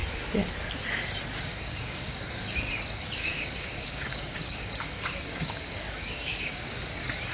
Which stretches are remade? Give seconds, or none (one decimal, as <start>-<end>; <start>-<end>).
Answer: 1.5-2.2; 3.2-6.8

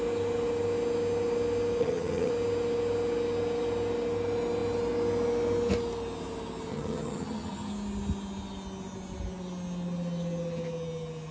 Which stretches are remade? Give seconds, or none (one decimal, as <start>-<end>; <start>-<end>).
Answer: 1.8-2.3; 6.7-7.7

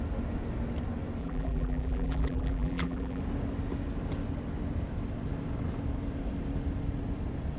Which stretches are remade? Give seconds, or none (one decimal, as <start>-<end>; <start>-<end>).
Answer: 1.2-3.2

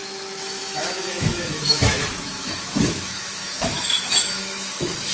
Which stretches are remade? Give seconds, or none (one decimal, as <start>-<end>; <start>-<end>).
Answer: 0.0-5.1

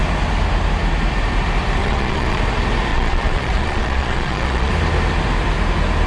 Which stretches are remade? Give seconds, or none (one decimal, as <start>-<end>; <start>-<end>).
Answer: 1.8-2.4; 2.9-4.7

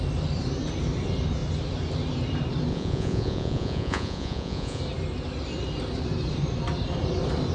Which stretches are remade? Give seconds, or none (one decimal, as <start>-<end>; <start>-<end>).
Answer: 2.7-4.8